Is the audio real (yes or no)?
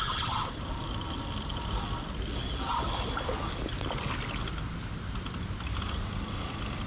yes